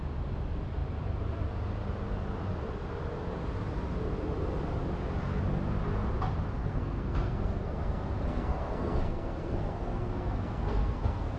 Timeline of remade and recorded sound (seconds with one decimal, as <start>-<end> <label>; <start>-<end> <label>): 0.0-6.6 recorded; 6.6-11.4 remade